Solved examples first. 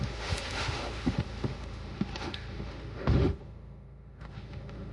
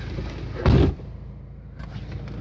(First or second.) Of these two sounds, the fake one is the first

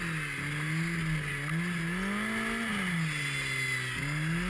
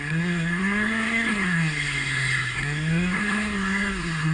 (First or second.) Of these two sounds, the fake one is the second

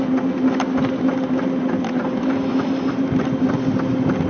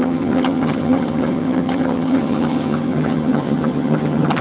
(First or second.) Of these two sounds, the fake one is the second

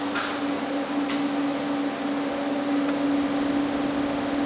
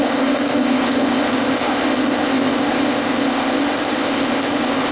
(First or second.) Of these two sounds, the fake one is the second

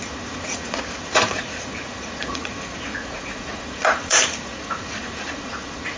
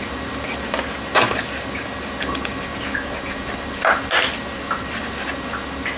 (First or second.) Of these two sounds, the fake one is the first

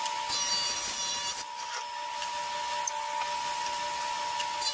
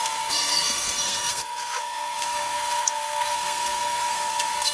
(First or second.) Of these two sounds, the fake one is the second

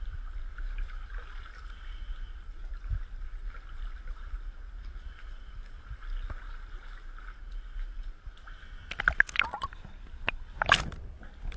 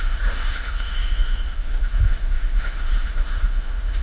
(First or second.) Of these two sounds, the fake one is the second